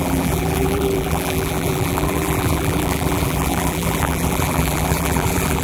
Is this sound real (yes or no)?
no